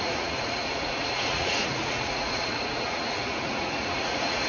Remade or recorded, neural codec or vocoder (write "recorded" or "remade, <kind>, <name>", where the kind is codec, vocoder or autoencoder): remade, vocoder, Vocos